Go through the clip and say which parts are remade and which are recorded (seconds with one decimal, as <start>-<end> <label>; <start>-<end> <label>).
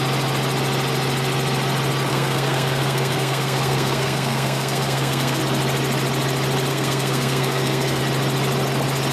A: 0.0-2.1 recorded; 2.1-5.4 remade; 5.4-6.7 recorded; 6.7-8.0 remade; 8.0-9.1 recorded